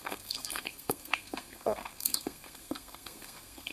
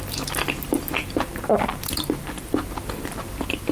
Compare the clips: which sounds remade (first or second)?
first